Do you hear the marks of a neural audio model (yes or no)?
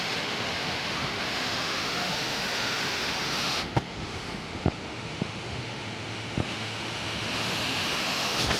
yes